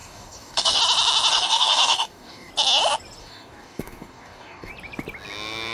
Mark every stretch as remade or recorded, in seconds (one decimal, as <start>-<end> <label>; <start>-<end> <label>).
0.0-0.8 remade; 0.8-1.3 recorded; 1.3-2.5 remade; 2.5-3.2 recorded; 3.2-4.7 remade; 4.7-5.7 recorded

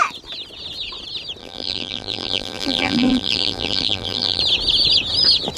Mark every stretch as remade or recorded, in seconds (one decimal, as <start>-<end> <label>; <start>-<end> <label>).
0.0-1.4 recorded; 1.4-4.4 remade; 4.4-5.6 recorded

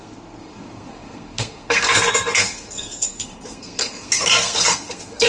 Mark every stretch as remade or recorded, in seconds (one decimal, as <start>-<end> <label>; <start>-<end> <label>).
0.0-5.3 remade

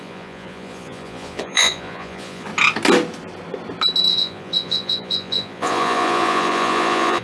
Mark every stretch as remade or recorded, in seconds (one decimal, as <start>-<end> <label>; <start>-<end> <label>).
0.0-2.5 remade; 2.5-4.1 recorded; 4.1-7.2 remade

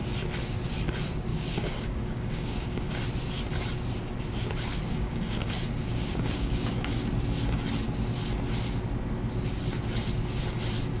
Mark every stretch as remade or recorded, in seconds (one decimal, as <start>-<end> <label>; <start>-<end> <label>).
0.0-1.3 recorded; 1.3-3.0 remade; 3.0-4.9 recorded; 4.9-6.9 remade; 6.9-11.0 recorded

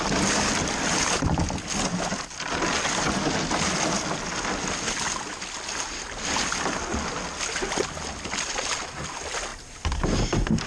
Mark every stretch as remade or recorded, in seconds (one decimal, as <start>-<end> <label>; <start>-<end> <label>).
0.0-10.7 recorded